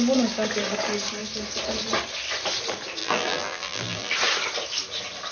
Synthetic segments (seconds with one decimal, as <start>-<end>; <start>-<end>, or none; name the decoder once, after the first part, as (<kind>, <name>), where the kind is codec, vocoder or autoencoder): 3.0-4.1 (vocoder, BigVGAN v2)